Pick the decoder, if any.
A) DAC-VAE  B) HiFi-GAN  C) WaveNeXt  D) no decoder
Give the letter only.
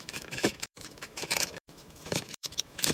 A